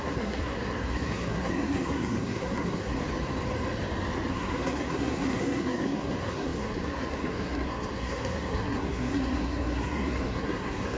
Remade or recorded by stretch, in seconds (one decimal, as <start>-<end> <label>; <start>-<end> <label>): 0.0-3.0 remade; 3.0-4.3 recorded; 4.3-11.0 remade